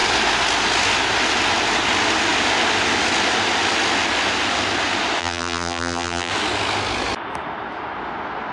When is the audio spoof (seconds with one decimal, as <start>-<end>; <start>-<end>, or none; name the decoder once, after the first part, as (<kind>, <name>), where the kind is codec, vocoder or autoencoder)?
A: 5.2-6.3 (vocoder, BigVGAN v2)